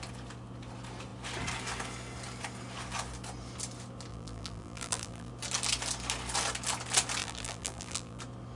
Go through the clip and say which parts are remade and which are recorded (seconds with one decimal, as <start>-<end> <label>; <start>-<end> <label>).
0.0-4.1 recorded; 4.1-5.3 remade; 5.3-7.2 recorded; 7.2-8.2 remade; 8.2-8.6 recorded